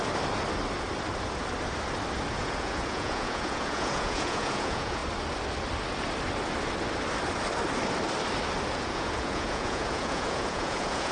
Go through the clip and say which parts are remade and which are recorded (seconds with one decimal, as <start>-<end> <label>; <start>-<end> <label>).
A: 0.0-2.3 recorded; 2.3-5.0 remade; 5.0-8.8 recorded; 8.8-11.1 remade